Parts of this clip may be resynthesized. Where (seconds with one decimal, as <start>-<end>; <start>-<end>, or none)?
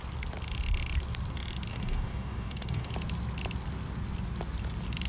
1.7-2.9